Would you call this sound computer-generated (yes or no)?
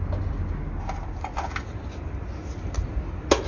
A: no